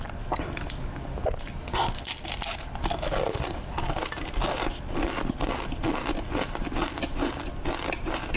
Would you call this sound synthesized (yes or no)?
no